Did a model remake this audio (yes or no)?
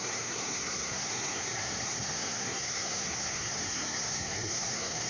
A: yes